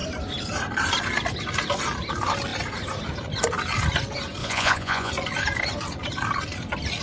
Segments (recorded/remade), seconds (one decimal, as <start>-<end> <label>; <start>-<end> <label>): 0.0-4.4 recorded; 4.4-5.1 remade; 5.1-7.0 recorded